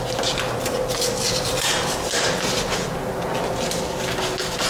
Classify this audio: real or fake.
real